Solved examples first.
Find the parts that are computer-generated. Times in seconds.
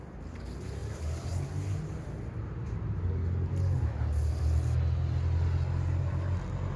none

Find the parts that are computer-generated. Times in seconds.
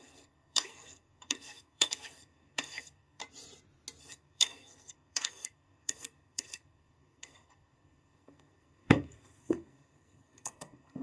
0.0-3.2; 4.0-11.0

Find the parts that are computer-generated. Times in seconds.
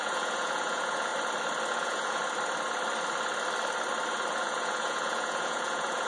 0.0-1.1; 1.7-2.2; 4.3-6.1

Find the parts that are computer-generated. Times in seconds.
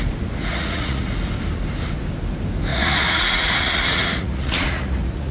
0.5-1.1; 2.7-5.3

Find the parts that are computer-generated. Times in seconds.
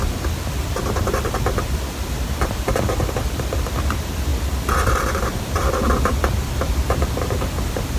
0.0-4.3; 5.2-8.0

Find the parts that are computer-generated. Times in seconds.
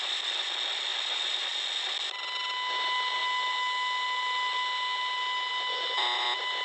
none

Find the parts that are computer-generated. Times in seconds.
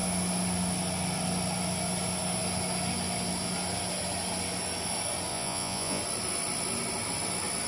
5.3-6.0